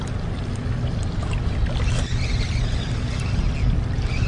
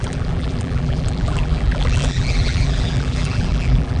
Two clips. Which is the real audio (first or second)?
first